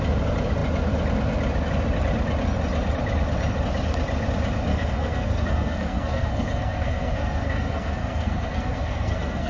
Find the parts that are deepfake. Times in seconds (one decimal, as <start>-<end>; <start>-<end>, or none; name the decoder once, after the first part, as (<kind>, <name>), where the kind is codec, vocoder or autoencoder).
4.7-9.5 (codec, SNAC)

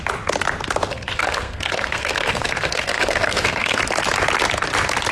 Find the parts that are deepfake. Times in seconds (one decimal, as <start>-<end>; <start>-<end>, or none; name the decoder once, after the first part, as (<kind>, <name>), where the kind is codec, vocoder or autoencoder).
0.9-3.8 (codec, SNAC)

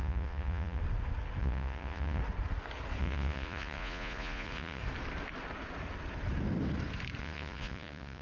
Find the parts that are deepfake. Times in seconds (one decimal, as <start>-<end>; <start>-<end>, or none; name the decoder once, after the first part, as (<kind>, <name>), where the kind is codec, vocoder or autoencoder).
0.0-0.8 (vocoder, Vocos); 1.4-2.2; 3.0-4.8; 7.2-8.2

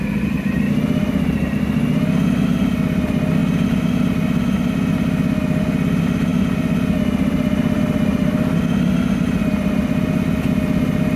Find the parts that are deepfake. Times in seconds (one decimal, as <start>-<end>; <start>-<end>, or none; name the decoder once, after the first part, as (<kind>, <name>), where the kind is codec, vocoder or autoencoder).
none

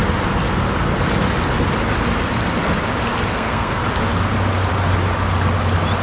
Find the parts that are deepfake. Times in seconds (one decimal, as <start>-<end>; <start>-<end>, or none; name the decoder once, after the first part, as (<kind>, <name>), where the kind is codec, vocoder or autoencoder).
3.3-3.8 (codec, SNAC)

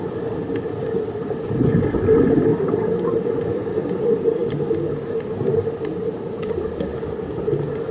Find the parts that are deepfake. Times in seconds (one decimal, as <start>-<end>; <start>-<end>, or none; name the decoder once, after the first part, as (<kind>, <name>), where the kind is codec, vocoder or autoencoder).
none

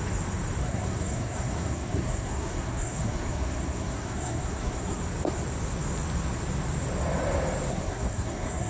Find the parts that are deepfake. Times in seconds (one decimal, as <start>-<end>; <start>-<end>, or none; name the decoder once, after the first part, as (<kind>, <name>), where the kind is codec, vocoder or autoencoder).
0.6-5.0 (codec, SNAC); 7.7-8.7

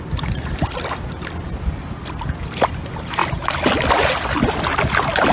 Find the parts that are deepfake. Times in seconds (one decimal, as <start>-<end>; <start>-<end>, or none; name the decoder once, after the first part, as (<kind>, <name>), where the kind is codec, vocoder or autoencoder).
none